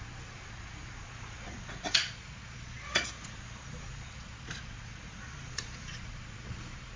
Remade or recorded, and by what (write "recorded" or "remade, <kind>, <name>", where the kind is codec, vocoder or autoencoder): remade, vocoder, Vocos